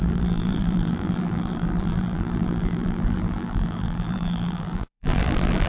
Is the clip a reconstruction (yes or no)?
yes